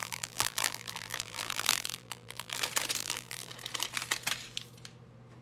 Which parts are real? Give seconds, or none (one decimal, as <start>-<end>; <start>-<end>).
2.6-3.0; 3.5-5.4